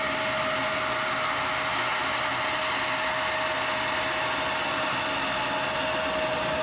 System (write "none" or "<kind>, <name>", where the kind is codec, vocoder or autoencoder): none